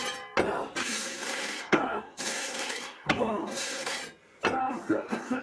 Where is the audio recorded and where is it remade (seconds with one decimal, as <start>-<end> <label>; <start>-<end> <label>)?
0.0-0.8 recorded; 0.8-4.0 remade; 4.0-4.6 recorded; 4.6-5.4 remade